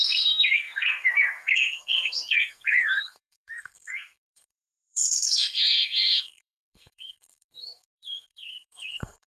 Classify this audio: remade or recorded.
remade